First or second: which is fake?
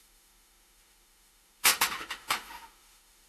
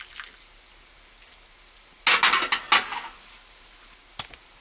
first